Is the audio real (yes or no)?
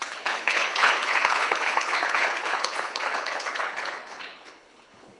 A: no